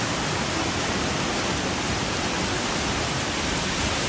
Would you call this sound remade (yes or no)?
no